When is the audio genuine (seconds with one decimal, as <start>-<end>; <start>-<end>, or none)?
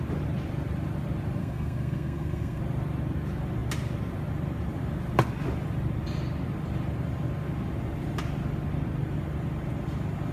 0.0-1.4; 2.6-10.3